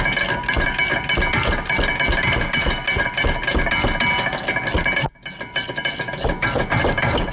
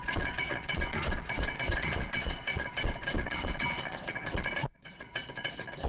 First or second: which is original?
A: first